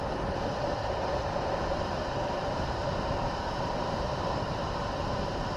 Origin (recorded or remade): remade